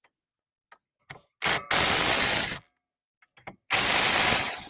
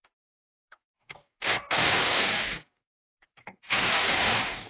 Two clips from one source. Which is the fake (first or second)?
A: second